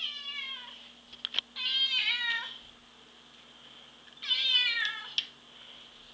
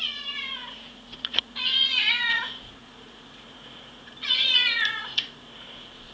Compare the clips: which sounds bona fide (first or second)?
first